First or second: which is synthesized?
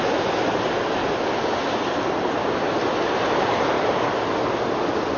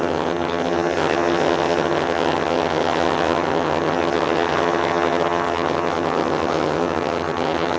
second